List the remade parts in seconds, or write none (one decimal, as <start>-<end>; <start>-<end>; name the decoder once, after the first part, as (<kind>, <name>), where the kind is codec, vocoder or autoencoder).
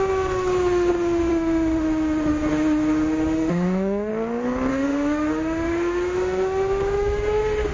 0.0-4.1 (autoencoder, DAC-VAE); 4.7-7.7